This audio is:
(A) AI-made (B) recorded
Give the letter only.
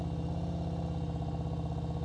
B